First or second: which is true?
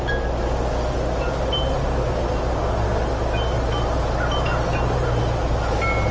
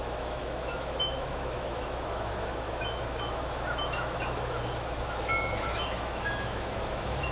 first